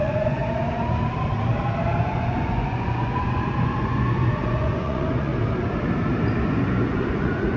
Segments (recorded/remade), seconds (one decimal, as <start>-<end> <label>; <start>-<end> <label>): 0.0-0.4 remade; 0.4-2.0 recorded; 2.0-5.3 remade; 5.3-6.5 recorded; 6.5-7.6 remade